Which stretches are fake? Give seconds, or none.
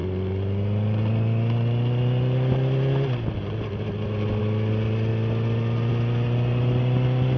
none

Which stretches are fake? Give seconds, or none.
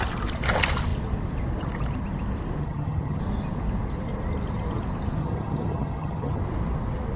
2.6-3.2 (vocoder, HiFi-GAN); 5.2-6.4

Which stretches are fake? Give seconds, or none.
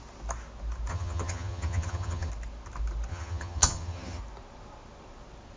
0.9-2.3 (vocoder, HiFi-GAN); 3.1-4.2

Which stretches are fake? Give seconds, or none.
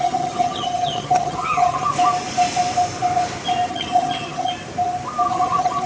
0.0-1.9 (vocoder, HiFi-GAN); 3.7-4.5; 5.3-5.9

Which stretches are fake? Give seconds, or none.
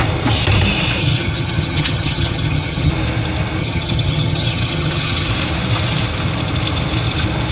1.0-2.9 (vocoder, HiFi-GAN); 3.6-5.3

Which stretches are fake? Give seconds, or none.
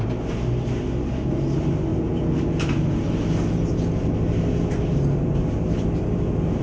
none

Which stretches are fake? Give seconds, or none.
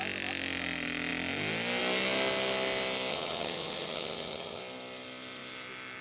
3.1-4.6 (vocoder, HiFi-GAN)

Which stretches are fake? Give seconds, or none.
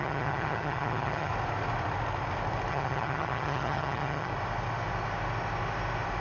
0.0-1.3 (vocoder, HiFi-GAN); 2.7-4.3